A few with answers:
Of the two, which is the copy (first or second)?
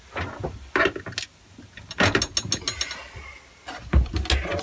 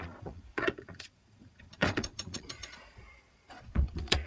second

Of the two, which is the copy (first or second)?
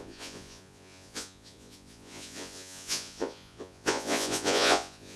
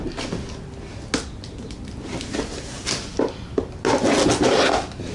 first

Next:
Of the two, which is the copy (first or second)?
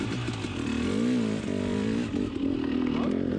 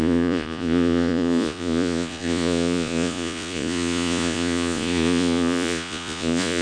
second